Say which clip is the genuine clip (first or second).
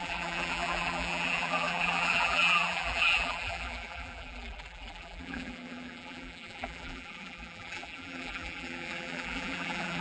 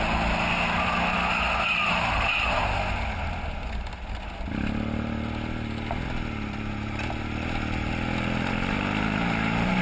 second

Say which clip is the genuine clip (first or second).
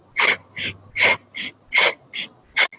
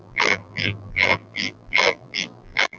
first